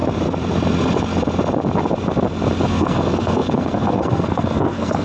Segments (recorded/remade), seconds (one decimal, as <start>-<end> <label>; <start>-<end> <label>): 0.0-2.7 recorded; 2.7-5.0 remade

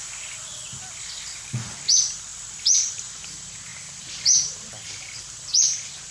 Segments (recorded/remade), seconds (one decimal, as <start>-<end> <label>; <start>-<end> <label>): 0.0-6.1 remade

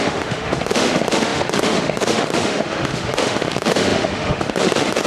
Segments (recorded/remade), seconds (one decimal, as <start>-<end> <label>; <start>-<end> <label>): 0.0-5.1 remade